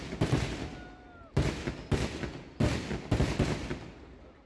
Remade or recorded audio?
recorded